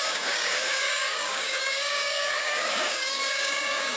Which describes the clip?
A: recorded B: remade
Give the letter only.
B